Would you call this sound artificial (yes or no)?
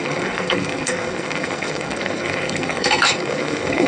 yes